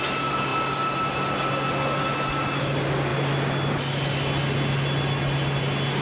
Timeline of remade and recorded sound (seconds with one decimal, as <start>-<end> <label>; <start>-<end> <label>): 0.0-6.0 recorded